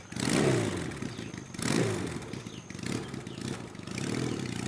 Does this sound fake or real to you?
real